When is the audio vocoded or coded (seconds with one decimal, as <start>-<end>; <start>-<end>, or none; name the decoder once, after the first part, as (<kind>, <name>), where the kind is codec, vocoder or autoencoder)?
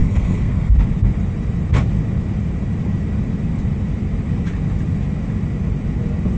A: 0.0-0.7 (codec, SNAC)